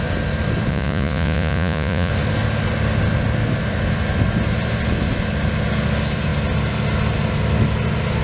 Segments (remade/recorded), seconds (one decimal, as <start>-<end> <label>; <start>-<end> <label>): 0.0-0.7 recorded; 0.7-2.1 remade; 2.1-8.2 recorded